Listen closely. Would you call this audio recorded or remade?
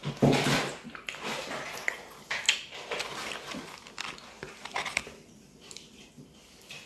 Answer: recorded